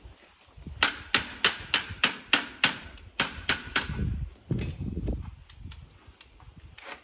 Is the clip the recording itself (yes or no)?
yes